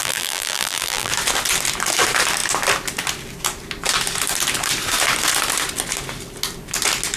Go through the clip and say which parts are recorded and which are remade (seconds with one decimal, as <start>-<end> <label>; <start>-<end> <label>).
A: 0.0-1.1 remade; 1.1-7.2 recorded